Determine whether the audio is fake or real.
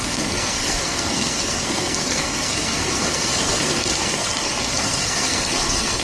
fake